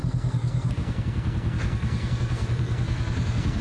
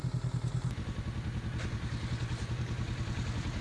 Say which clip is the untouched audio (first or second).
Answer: second